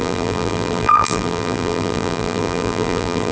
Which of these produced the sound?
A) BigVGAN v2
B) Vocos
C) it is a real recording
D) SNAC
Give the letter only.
A